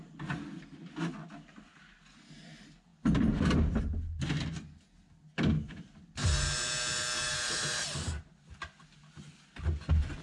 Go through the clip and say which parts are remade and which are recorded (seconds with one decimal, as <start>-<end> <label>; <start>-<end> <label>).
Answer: 0.0-10.2 recorded